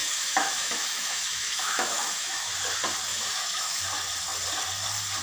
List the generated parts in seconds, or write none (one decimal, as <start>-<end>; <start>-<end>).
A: 0.0-2.5; 3.1-3.8